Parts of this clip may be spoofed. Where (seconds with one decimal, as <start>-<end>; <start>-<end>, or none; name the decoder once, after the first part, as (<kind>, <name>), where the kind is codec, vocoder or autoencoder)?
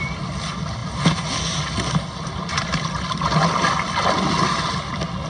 none